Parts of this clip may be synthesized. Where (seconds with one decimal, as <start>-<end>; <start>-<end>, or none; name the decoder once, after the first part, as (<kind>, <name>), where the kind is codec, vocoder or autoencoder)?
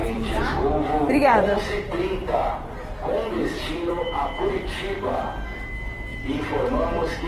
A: 0.0-4.4 (vocoder, BigVGAN v2); 6.1-6.6